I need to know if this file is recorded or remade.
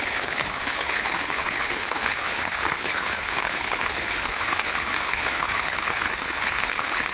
remade